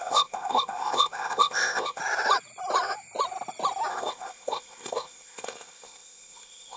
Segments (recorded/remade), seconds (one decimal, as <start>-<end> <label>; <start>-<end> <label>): 0.0-2.0 remade; 2.0-3.9 recorded; 3.9-6.8 remade